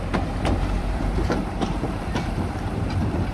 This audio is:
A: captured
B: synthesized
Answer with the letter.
B